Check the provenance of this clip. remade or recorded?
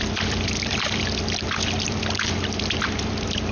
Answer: remade